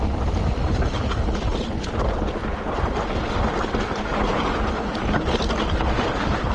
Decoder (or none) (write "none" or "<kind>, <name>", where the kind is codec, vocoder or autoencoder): none